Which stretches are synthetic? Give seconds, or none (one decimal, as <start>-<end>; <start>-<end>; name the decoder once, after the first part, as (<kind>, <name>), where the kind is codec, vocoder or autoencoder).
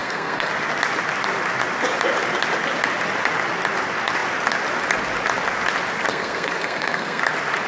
0.0-0.5 (codec, SNAC); 6.1-7.2